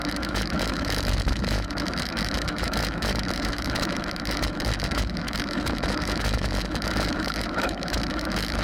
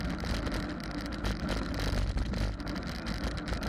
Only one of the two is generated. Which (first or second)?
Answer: first